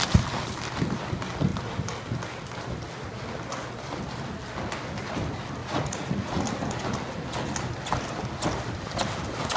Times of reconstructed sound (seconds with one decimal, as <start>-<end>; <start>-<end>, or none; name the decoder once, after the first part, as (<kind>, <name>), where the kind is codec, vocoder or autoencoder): 5.6-6.4 (vocoder, Vocos)